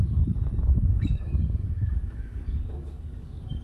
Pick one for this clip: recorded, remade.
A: remade